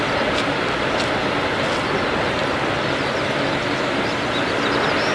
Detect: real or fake real